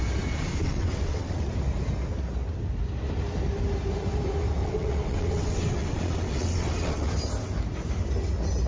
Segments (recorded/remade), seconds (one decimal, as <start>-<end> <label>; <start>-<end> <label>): 0.0-0.6 recorded; 0.6-1.5 remade; 1.5-4.6 recorded; 4.6-7.1 remade; 7.1-8.7 recorded